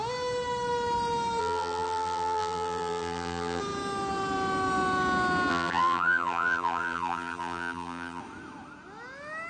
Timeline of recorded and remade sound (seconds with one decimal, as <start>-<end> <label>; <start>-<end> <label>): 0.0-1.4 recorded; 1.4-3.6 remade; 3.6-5.5 recorded; 5.5-8.2 remade; 8.2-9.5 recorded

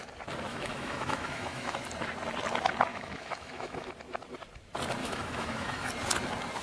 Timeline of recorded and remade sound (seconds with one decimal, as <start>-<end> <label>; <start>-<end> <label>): 0.0-0.5 recorded; 0.5-1.8 remade; 1.8-2.9 recorded; 2.9-3.9 remade; 3.9-5.0 recorded; 5.0-5.9 remade; 5.9-6.6 recorded

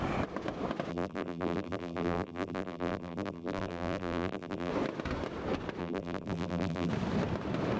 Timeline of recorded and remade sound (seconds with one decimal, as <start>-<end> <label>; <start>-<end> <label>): 0.0-0.9 recorded; 0.9-4.7 remade; 4.7-5.8 recorded; 5.8-6.9 remade; 6.9-7.8 recorded

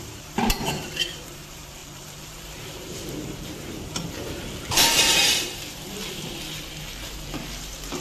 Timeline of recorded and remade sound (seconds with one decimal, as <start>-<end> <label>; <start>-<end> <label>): 0.0-8.0 remade